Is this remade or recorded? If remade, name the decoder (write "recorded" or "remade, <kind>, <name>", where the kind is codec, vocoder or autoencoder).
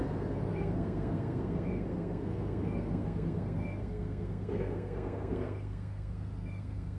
remade, codec, SNAC